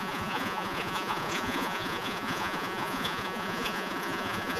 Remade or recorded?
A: remade